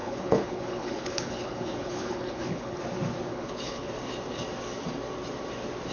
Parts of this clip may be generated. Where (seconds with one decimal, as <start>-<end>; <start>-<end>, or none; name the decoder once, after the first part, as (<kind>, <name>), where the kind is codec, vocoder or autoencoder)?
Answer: 0.0-2.8 (codec, HILCodec); 3.3-3.9

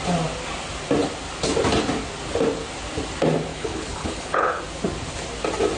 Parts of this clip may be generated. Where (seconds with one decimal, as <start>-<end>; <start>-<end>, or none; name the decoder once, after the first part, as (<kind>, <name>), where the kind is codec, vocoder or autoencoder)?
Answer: 3.5-4.6 (codec, HILCodec)

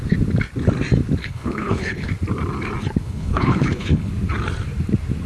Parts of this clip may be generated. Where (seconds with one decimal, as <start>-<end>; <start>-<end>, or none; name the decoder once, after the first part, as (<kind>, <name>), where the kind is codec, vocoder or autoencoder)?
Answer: 1.2-2.1 (codec, HILCodec); 3.0-4.1

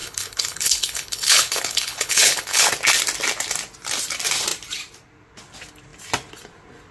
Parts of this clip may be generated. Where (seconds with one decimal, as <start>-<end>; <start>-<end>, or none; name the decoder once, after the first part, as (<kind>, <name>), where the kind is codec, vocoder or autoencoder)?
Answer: 0.0-2.7 (codec, HILCodec)